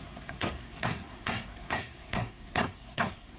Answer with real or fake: fake